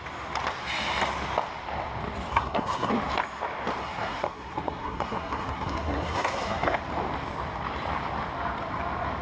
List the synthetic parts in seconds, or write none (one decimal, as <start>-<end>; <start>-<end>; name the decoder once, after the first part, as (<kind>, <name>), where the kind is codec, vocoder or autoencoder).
2.3-2.9 (codec, SNAC); 3.8-6.8